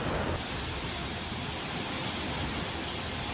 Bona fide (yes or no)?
yes